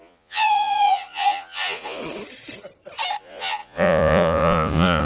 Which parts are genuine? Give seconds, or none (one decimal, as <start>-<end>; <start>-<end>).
2.0-3.2